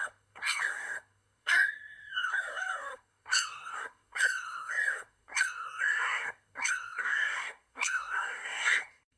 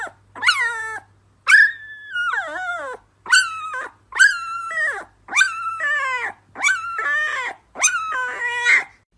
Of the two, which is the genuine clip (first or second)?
second